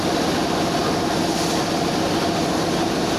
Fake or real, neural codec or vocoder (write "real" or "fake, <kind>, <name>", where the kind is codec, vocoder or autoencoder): real